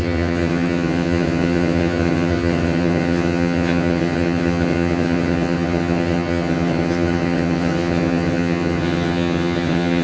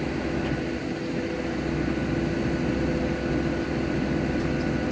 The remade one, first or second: first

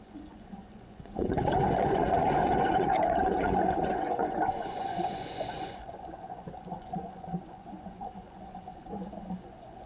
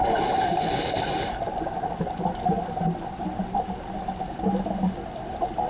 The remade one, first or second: first